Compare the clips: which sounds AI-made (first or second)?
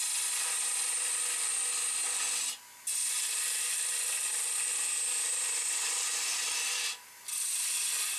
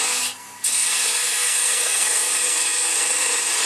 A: second